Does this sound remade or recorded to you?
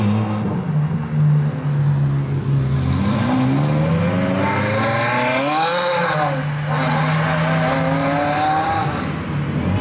recorded